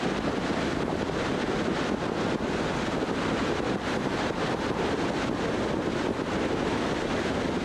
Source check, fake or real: real